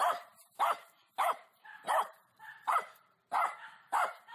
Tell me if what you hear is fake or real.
fake